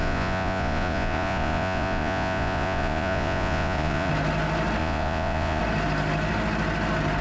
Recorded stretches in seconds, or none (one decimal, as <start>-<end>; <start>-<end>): 4.1-4.8; 5.6-7.2